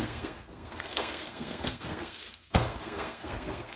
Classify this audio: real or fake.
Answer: fake